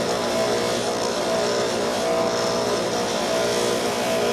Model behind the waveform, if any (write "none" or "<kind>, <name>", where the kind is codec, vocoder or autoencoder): none